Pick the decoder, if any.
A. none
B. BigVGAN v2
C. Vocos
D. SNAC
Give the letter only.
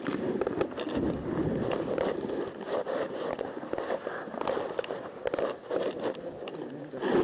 A